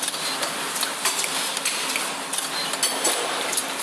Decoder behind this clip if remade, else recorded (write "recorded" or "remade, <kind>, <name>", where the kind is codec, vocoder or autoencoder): recorded